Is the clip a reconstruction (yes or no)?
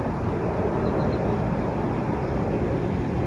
no